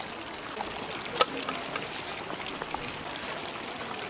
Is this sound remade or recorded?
recorded